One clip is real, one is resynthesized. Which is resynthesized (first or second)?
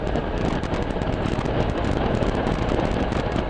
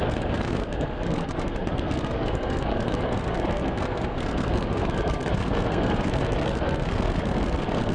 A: second